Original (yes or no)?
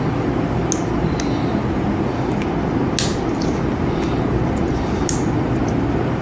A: yes